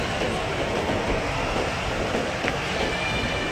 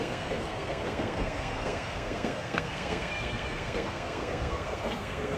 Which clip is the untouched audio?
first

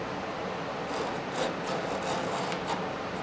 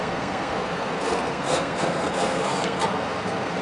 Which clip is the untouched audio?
first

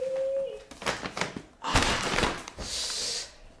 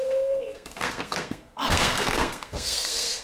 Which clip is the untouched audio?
first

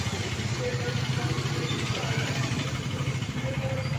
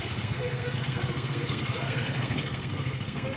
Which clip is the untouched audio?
first